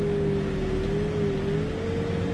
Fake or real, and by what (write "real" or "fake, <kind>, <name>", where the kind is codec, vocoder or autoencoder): real